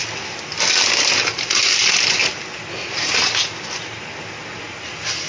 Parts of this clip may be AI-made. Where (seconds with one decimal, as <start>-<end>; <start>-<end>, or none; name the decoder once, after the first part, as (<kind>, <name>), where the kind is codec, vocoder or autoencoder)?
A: none